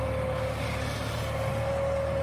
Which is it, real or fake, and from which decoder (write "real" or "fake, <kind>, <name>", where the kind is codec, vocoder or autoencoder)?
real